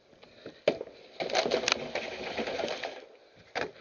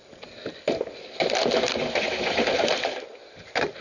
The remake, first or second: second